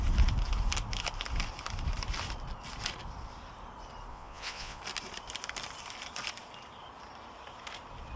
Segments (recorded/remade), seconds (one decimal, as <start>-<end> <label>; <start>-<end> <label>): 0.0-4.1 recorded; 4.1-4.8 remade; 4.8-8.2 recorded